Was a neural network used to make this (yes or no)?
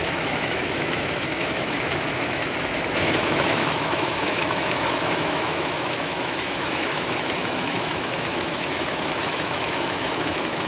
yes